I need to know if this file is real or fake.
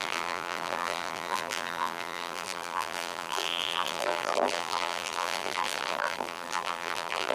fake